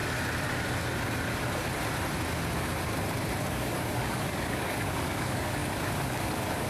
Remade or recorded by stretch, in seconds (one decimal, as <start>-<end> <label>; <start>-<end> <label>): 0.0-3.5 recorded; 3.5-6.7 remade